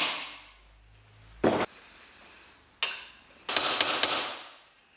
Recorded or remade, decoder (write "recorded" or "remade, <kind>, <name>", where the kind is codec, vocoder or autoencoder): recorded